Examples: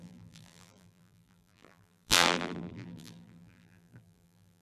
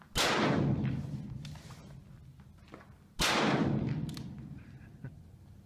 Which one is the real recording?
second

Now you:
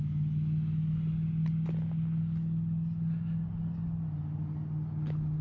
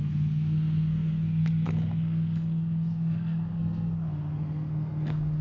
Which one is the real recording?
first